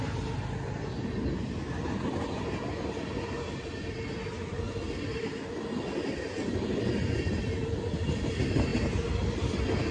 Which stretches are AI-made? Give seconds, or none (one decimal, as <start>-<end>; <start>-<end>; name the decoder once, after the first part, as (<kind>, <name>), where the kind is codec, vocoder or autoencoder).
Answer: none